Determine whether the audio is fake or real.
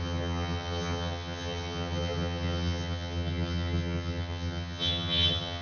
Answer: fake